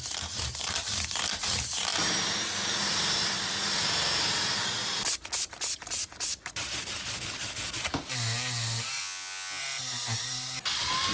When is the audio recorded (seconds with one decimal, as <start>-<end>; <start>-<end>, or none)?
0.0-9.0; 9.6-11.1